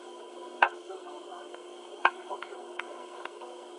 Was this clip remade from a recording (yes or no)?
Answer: yes